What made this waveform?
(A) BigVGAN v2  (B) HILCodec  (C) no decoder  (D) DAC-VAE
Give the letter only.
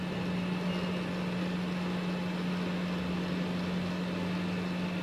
C